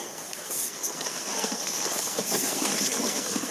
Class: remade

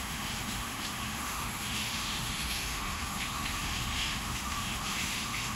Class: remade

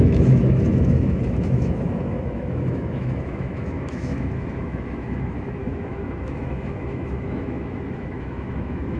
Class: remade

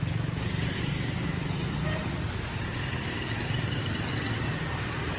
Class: recorded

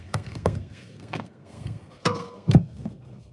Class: remade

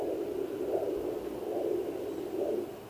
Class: recorded